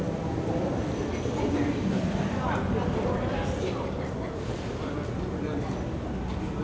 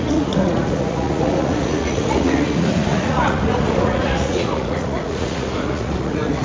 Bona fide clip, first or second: first